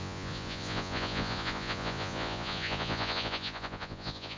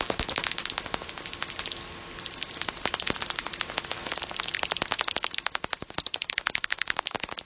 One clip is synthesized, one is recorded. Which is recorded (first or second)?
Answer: second